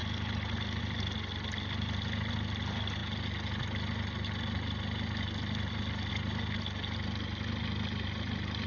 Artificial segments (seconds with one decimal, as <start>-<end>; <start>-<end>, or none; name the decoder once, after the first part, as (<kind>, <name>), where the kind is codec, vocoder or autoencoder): none